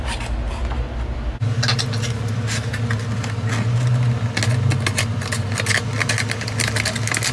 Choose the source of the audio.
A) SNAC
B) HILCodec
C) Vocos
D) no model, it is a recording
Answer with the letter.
D